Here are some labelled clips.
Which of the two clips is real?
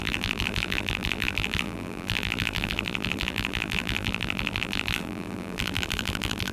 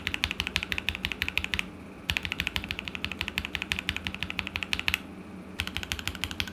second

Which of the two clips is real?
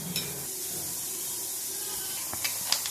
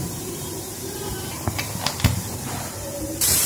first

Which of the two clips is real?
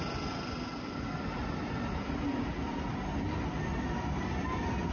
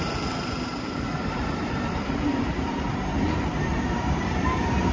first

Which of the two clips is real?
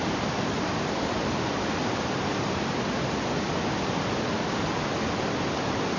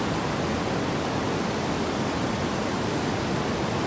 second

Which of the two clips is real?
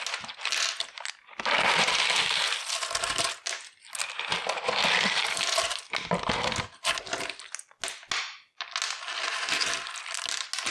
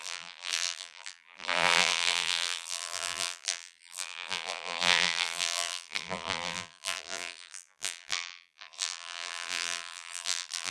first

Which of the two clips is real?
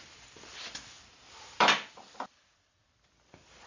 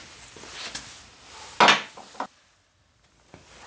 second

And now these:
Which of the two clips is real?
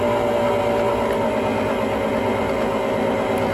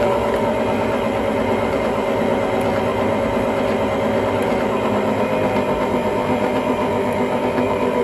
first